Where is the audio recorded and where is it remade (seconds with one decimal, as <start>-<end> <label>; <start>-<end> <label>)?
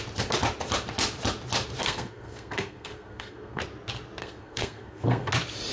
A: 0.0-1.8 recorded; 1.8-3.6 remade; 3.6-4.2 recorded; 4.2-5.3 remade; 5.3-5.7 recorded